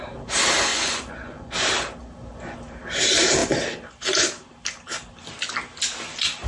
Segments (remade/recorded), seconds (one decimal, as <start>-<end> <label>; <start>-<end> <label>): 0.0-0.7 recorded; 0.7-1.5 remade; 1.5-6.5 recorded